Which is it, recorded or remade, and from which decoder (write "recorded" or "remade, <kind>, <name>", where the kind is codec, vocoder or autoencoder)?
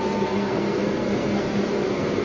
remade, codec, SNAC